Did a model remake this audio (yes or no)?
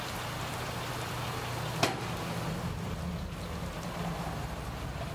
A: no